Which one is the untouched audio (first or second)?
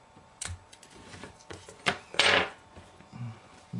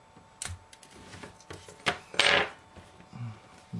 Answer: second